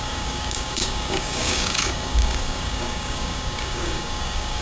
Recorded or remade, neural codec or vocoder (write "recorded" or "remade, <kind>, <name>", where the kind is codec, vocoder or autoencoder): remade, codec, DAC